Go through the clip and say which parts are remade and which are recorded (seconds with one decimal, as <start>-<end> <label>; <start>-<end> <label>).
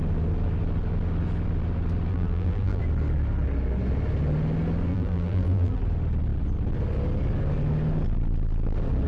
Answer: 0.0-2.1 recorded; 2.1-2.8 remade; 2.8-4.9 recorded; 4.9-5.8 remade; 5.8-9.1 recorded